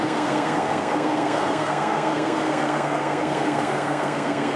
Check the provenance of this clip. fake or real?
fake